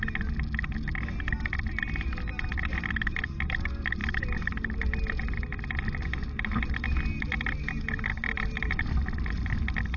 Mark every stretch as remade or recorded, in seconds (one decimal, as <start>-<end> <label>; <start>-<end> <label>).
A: 0.0-10.0 recorded